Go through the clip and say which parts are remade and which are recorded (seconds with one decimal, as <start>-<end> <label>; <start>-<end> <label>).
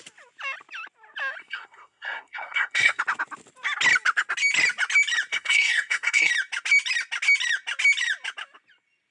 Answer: 0.0-1.4 recorded; 1.4-3.0 remade; 3.0-5.3 recorded; 5.3-6.3 remade; 6.3-9.1 recorded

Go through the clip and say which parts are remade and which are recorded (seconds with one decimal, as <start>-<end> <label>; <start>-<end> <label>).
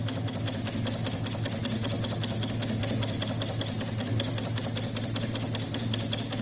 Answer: 0.0-6.4 recorded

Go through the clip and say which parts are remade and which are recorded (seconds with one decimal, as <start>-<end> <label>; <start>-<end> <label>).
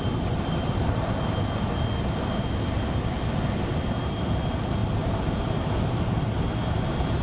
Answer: 0.0-7.2 recorded